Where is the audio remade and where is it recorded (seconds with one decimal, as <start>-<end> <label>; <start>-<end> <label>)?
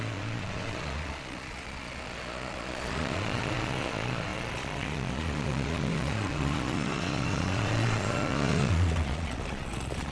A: 0.0-10.1 remade